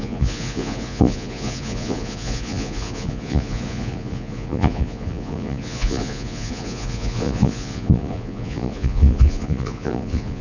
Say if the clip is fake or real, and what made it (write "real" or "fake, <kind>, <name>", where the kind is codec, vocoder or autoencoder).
fake, vocoder, Vocos